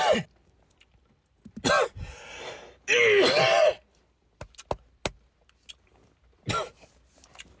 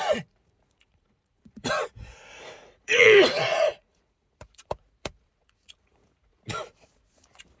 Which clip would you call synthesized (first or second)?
second